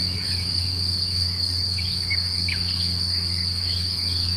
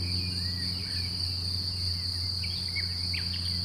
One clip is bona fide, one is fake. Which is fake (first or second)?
first